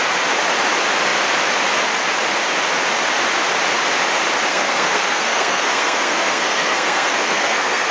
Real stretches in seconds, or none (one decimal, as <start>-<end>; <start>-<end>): 0.0-4.5